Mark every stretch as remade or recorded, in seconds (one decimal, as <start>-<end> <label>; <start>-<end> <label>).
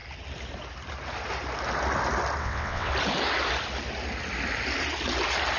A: 0.0-2.4 recorded; 2.4-2.9 remade; 2.9-5.6 recorded